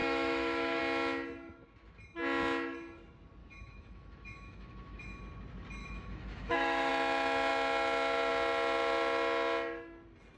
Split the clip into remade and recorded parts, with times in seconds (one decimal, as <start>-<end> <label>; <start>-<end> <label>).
0.0-0.8 remade; 0.8-3.4 recorded; 3.4-5.2 remade; 5.2-5.8 recorded; 5.8-6.9 remade; 6.9-10.4 recorded